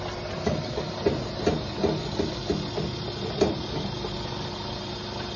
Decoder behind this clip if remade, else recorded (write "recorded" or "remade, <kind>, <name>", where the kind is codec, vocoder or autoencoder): recorded